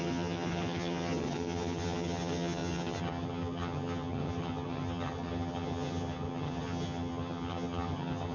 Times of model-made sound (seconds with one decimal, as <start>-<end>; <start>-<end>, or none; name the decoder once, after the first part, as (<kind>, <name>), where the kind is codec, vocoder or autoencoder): 0.0-8.3 (vocoder, HiFi-GAN)